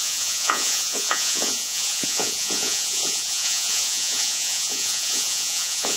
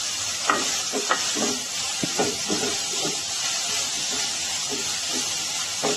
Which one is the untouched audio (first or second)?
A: second